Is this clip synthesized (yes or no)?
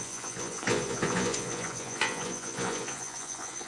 yes